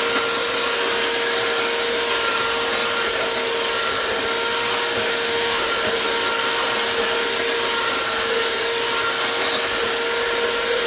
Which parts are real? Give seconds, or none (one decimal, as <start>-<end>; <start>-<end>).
0.0-5.1; 5.7-10.9